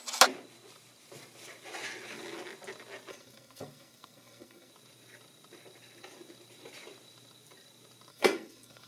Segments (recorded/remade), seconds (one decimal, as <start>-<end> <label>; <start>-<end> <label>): 0.0-3.1 recorded; 3.1-4.7 remade; 4.7-8.1 recorded; 8.1-8.9 remade